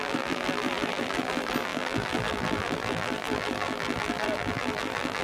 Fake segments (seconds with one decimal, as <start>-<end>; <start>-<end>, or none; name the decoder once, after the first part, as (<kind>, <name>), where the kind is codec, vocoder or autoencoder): 0.0-5.2 (vocoder, BigVGAN v2)